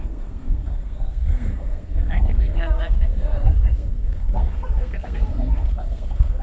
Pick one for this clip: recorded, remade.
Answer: remade